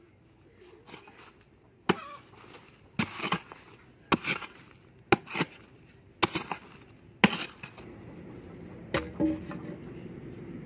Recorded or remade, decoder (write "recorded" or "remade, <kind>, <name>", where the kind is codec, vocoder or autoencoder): recorded